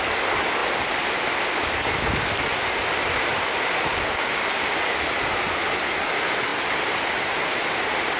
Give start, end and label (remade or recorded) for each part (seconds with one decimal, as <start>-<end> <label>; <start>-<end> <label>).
0.0-3.9 recorded; 3.9-4.7 remade; 4.7-8.2 recorded